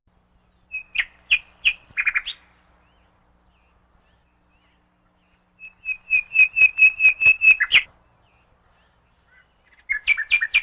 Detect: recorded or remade recorded